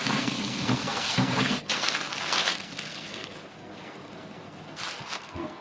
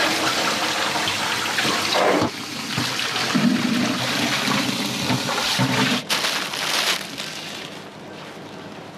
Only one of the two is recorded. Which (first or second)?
second